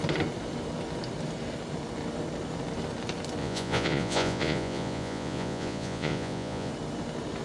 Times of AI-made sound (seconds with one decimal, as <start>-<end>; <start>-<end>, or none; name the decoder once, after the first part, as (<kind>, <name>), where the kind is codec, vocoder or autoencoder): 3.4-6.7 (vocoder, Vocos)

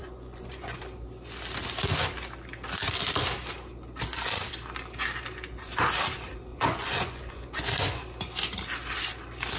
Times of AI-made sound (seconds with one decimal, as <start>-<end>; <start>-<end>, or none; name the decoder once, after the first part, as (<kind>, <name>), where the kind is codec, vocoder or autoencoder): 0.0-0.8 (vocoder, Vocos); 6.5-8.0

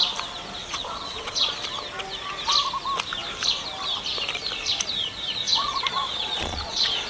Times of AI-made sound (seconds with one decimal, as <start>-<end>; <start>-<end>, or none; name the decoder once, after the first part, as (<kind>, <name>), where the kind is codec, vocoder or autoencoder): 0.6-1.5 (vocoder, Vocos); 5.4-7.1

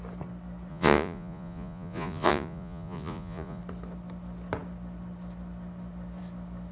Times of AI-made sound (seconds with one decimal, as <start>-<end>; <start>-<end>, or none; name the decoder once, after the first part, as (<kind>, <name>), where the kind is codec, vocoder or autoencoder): 0.7-3.6 (vocoder, Vocos)